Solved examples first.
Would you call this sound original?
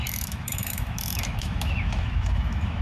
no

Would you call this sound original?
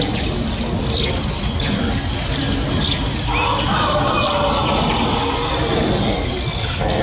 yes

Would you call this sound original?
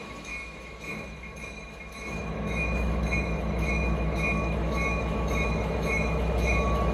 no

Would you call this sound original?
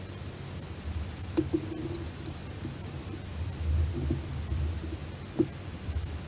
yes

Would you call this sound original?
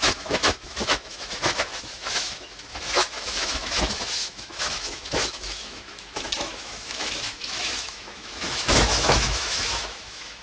no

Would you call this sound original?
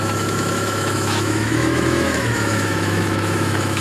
no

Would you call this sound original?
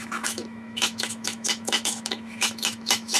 no